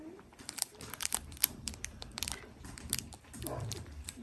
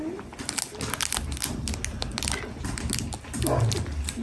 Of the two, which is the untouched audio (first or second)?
second